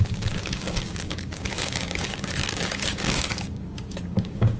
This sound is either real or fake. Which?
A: fake